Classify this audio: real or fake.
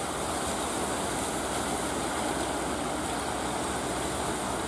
real